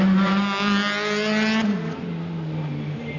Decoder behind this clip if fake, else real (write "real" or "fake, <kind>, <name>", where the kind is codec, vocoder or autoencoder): real